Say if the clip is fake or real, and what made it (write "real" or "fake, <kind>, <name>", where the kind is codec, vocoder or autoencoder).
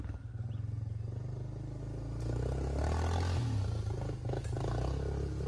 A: real